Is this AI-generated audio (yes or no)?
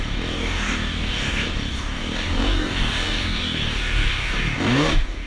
yes